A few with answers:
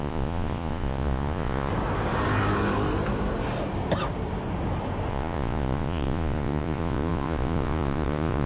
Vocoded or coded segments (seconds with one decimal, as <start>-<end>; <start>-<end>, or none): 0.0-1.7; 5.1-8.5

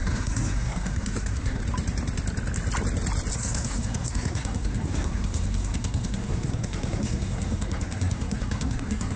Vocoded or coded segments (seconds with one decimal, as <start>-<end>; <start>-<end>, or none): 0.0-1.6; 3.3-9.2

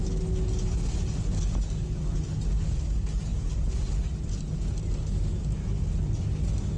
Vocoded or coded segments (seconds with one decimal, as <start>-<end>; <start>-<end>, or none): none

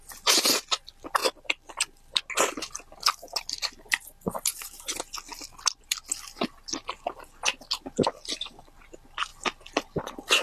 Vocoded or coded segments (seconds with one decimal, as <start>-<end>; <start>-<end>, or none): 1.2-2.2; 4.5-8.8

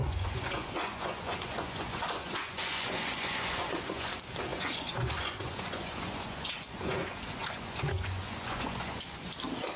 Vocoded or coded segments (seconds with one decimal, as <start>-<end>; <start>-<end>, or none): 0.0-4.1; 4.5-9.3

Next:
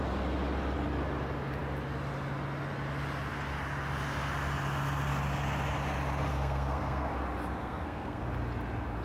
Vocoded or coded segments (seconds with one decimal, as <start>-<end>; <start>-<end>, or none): 6.3-7.1; 7.6-8.2

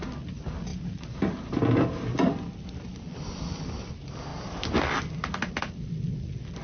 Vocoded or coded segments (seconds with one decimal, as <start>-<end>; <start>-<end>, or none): 0.7-3.9